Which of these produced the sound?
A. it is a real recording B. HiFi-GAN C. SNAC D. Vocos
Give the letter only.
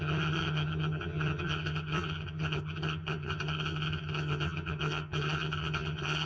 B